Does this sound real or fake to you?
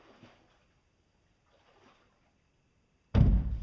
real